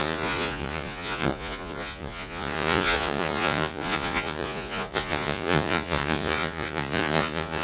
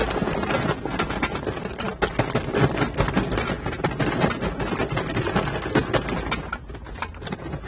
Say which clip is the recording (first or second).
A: second